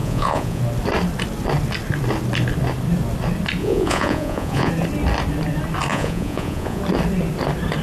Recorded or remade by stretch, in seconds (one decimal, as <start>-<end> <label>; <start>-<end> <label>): 0.0-0.6 remade; 0.6-3.6 recorded; 3.6-4.7 remade; 4.7-5.9 recorded; 5.9-6.8 remade; 6.8-7.8 recorded